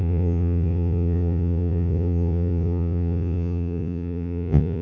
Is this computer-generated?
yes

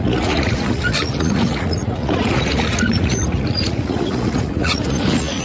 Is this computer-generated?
yes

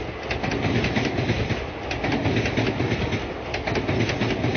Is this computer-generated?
no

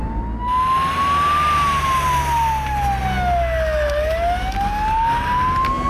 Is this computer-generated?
no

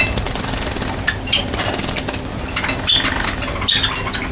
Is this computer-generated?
no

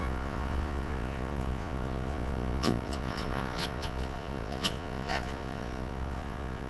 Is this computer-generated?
yes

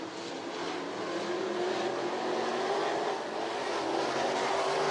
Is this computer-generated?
no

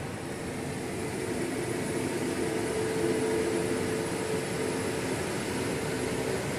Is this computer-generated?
no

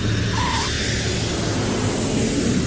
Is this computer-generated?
no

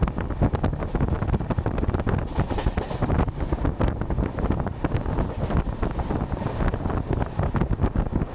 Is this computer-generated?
no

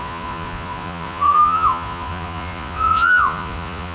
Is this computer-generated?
yes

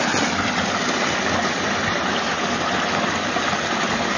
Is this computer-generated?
no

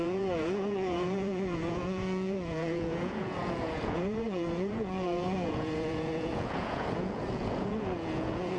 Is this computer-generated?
yes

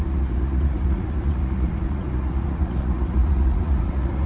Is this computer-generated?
yes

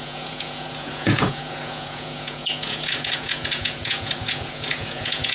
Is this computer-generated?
yes